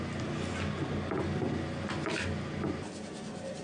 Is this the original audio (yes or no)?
yes